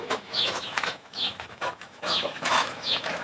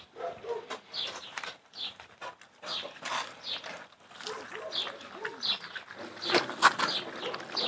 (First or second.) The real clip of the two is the second